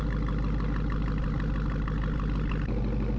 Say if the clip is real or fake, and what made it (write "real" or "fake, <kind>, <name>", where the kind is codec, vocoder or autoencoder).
real